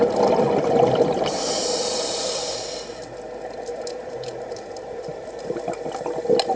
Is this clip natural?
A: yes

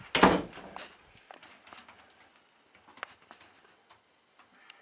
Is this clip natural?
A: yes